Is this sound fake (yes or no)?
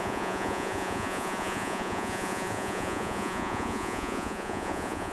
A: yes